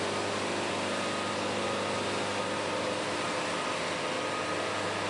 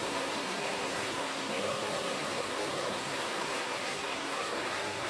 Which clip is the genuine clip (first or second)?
first